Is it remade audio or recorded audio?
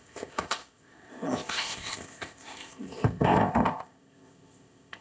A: remade